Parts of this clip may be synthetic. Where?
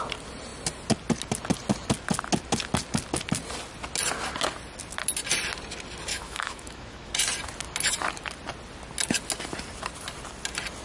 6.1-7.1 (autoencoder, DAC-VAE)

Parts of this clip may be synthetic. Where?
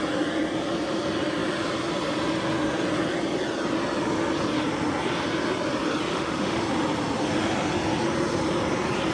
6.1-6.6 (autoencoder, DAC-VAE)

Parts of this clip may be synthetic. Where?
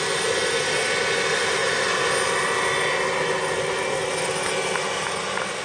none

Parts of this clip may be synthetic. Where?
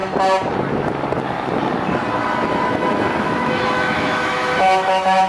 3.2-5.3 (autoencoder, DAC-VAE)